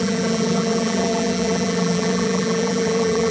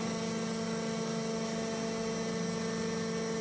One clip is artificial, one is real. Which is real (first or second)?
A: second